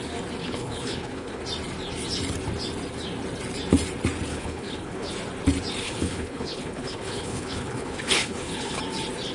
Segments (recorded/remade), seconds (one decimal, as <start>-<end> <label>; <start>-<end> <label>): 0.0-0.4 recorded; 0.4-1.4 remade; 1.4-4.3 recorded; 4.3-5.1 remade; 5.1-5.8 recorded; 5.8-8.8 remade; 8.8-9.3 recorded